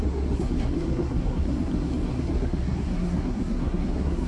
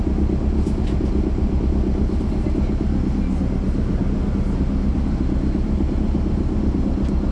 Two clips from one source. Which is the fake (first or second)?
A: first